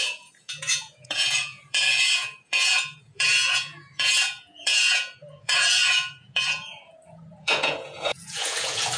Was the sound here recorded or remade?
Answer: remade